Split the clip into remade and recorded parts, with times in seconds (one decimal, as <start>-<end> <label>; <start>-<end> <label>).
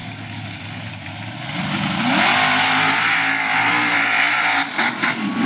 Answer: 0.0-0.9 remade; 0.9-5.5 recorded